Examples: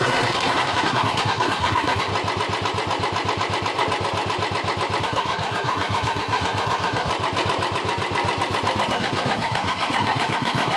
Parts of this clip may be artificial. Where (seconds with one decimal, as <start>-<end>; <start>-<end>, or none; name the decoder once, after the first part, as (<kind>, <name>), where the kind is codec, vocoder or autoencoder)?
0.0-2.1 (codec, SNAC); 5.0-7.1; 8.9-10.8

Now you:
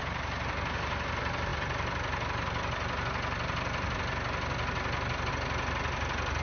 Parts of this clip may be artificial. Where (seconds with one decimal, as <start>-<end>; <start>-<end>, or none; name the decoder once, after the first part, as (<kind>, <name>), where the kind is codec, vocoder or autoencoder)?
none

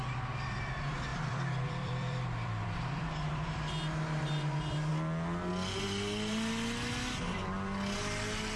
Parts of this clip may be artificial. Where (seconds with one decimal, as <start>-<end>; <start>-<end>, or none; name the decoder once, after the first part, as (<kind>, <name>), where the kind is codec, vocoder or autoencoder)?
1.1-3.1 (vocoder, BigVGAN v2)

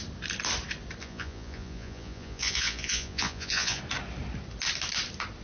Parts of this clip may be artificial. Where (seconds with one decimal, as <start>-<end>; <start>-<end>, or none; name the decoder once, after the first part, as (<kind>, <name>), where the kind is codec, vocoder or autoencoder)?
1.0-3.8 (vocoder, Vocos)